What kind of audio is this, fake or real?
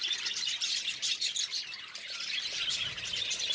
real